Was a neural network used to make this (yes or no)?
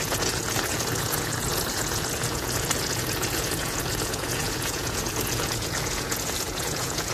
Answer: yes